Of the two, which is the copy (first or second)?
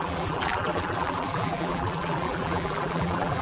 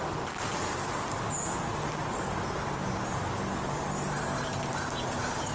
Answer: first